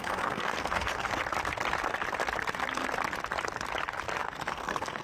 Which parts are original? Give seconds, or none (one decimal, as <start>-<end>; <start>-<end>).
1.2-4.2

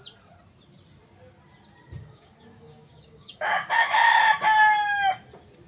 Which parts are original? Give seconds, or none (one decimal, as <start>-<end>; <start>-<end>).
0.0-2.0; 4.2-5.7